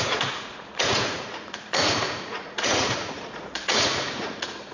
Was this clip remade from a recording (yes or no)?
yes